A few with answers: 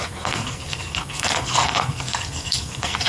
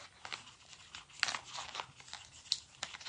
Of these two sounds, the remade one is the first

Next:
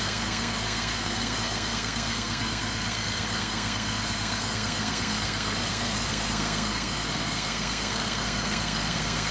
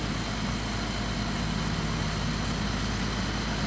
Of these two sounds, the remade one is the first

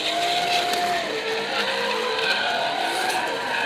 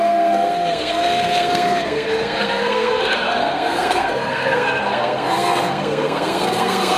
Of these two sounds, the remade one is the second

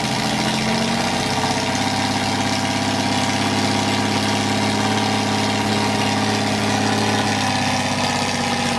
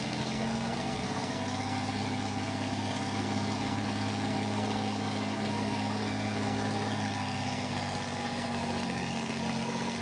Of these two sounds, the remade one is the second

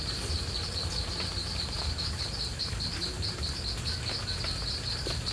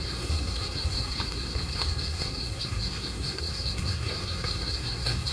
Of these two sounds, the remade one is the second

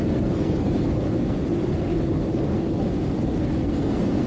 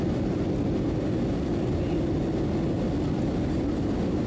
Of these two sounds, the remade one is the first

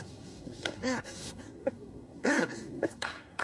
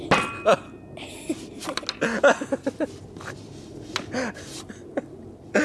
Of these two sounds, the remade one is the first